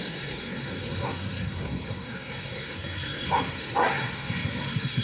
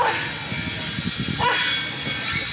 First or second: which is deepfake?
first